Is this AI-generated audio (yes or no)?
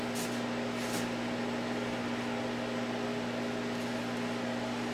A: no